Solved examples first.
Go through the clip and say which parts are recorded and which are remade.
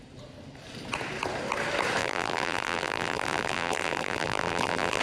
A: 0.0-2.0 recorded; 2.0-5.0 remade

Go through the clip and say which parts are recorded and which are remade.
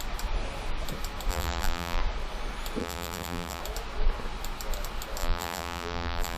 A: 0.0-1.3 recorded; 1.3-2.0 remade; 2.0-2.8 recorded; 2.8-3.6 remade; 3.6-5.2 recorded; 5.2-6.4 remade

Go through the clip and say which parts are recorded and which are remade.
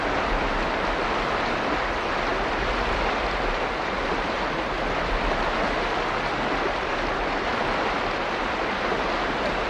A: 0.0-2.3 recorded; 2.3-3.0 remade; 3.0-9.7 recorded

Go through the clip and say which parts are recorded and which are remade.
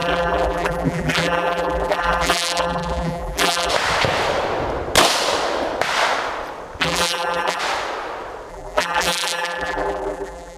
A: 0.0-3.7 remade; 3.7-6.8 recorded; 6.8-7.6 remade; 7.6-8.5 recorded; 8.5-10.6 remade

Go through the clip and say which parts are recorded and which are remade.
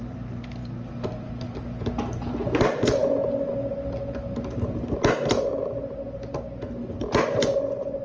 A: 0.0-8.0 recorded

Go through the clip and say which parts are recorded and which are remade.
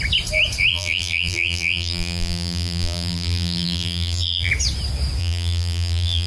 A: 0.0-0.7 recorded; 0.7-4.5 remade; 4.5-5.2 recorded; 5.2-6.3 remade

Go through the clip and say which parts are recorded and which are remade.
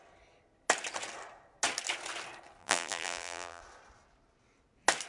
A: 0.0-2.6 recorded; 2.6-3.6 remade; 3.6-5.1 recorded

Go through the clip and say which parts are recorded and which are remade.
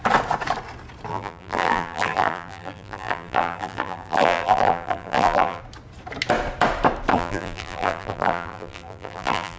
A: 0.0-1.1 recorded; 1.1-5.6 remade; 5.6-7.1 recorded; 7.1-9.6 remade